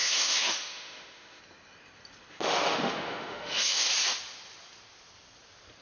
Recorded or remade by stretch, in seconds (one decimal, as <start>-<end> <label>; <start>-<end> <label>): 0.0-1.4 remade; 1.4-2.3 recorded; 2.3-3.9 remade; 3.9-5.8 recorded